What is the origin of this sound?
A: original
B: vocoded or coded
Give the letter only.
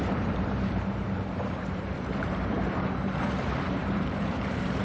B